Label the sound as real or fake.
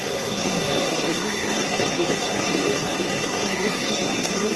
fake